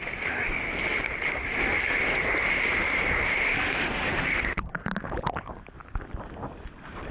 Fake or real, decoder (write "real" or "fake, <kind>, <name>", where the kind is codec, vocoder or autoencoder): real